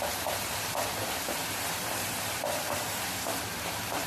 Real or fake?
fake